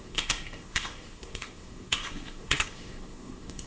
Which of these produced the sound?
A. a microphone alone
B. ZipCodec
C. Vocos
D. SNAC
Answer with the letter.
D